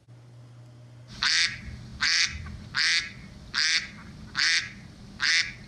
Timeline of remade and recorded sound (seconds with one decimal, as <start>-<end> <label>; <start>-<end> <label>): 0.0-5.7 recorded